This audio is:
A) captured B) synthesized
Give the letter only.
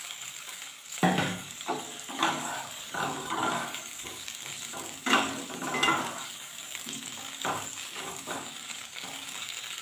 B